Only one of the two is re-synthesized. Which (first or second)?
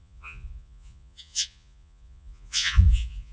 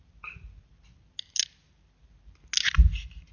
first